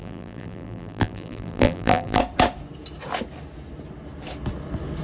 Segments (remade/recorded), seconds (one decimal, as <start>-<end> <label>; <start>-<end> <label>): 0.0-2.2 remade; 2.2-5.0 recorded